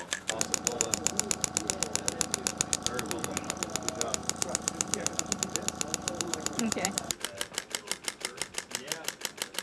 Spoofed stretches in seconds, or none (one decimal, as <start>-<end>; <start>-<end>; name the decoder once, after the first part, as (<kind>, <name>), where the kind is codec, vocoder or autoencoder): 0.7-1.3 (vocoder, BigVGAN v2); 4.2-5.4; 6.0-7.2